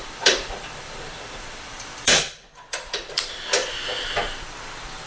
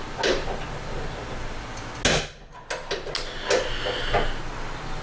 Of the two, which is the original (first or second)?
second